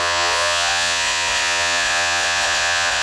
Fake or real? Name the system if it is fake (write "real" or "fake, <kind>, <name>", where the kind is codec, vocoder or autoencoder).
fake, vocoder, Vocos